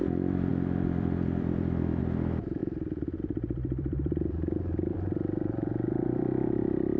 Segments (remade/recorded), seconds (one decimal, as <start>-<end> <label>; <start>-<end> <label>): 0.0-2.6 remade; 2.6-3.2 recorded; 3.2-7.0 remade